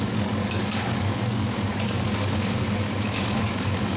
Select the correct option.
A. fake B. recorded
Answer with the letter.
A